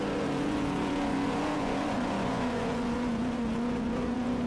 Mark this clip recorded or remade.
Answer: remade